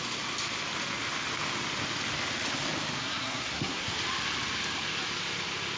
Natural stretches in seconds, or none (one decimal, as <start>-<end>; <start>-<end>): 0.0-3.0; 3.9-5.8